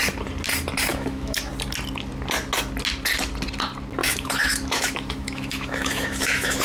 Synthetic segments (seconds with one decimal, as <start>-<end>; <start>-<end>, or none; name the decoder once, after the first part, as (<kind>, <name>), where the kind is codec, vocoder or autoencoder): 0.9-1.5 (autoencoder, DAC-VAE); 4.0-6.6